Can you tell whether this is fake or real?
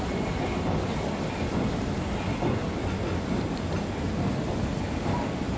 real